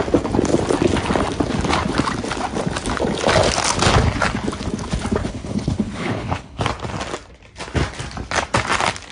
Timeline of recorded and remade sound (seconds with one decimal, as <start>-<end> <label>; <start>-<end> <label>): 0.0-5.2 recorded; 5.2-6.6 remade; 6.6-9.1 recorded